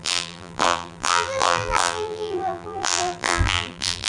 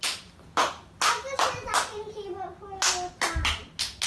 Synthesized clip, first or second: first